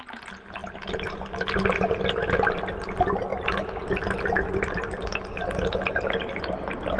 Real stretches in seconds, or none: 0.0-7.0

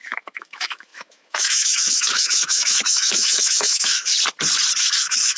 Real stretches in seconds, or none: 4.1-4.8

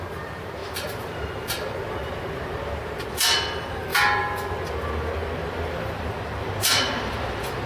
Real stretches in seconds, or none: 0.0-7.7

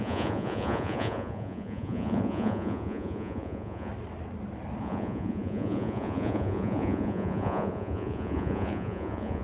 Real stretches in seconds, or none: 3.9-4.8